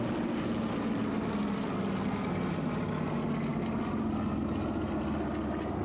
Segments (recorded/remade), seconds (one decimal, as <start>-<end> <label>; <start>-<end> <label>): 0.0-5.8 recorded